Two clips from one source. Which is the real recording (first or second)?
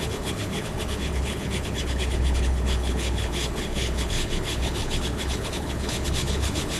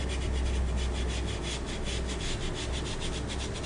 second